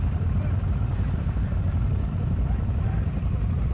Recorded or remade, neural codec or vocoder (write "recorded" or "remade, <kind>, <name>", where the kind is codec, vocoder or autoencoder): remade, vocoder, BigVGAN v2